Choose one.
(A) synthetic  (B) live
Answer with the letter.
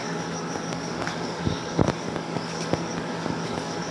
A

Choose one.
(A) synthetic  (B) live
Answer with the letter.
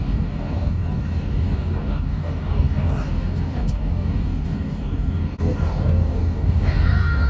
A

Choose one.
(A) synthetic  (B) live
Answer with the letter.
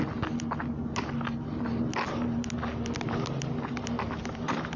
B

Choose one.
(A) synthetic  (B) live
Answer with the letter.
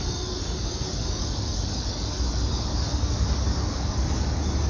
A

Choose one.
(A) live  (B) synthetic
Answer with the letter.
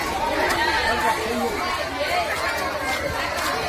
A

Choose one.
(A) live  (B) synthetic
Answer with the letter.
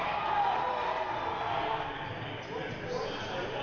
A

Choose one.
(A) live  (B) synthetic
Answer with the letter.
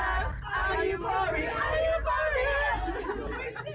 A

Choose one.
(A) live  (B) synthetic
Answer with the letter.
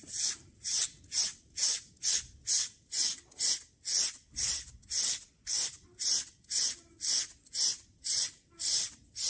A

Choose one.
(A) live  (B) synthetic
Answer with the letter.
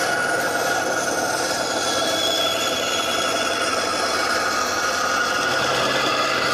A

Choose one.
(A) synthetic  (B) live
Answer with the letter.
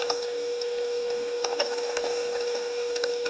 A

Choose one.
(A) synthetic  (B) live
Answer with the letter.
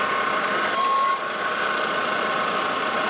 B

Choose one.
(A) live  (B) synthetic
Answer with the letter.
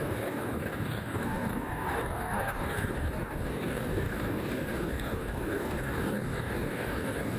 B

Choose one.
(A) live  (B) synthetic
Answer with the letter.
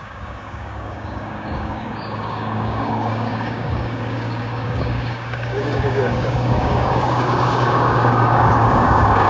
B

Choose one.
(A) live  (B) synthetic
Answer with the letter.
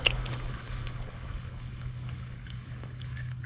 B